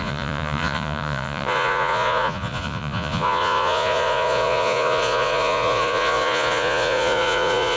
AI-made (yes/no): yes